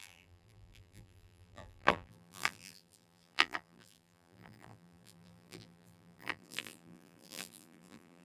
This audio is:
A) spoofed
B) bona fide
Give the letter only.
A